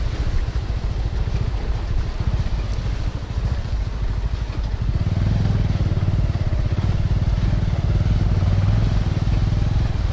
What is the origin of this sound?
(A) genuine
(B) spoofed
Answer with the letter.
A